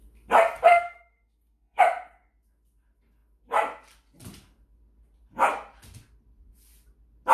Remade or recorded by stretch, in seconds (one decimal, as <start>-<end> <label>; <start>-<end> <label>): 0.0-0.7 recorded; 0.7-1.8 remade; 1.8-7.3 recorded